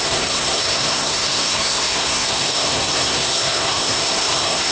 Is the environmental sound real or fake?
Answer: fake